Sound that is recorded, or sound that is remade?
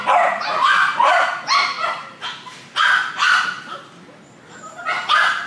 recorded